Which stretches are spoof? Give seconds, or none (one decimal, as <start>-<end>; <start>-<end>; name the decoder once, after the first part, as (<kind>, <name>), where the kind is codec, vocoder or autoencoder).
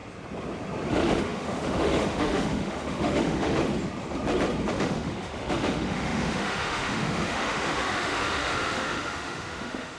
0.9-3.6 (autoencoder, DAC-VAE); 4.7-10.0